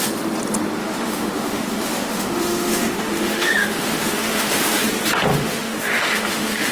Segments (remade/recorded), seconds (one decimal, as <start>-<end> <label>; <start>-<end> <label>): 0.0-0.8 recorded; 0.8-4.8 remade; 4.8-5.3 recorded; 5.3-6.7 remade